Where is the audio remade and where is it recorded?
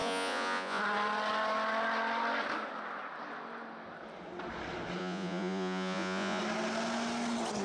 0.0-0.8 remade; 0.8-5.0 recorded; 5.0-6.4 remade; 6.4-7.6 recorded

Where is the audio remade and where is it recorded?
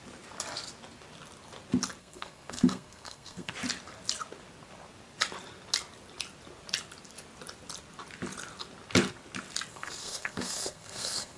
0.0-2.0 recorded; 2.0-3.5 remade; 3.5-9.7 recorded; 9.7-11.4 remade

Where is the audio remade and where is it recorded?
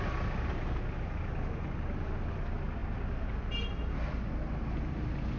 0.0-5.4 recorded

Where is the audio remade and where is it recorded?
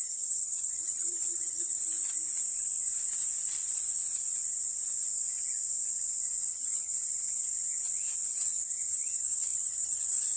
0.0-1.8 remade; 1.8-6.5 recorded; 6.5-6.9 remade; 6.9-8.3 recorded; 8.3-10.4 remade